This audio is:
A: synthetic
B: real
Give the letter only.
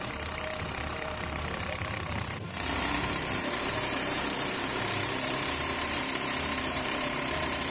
A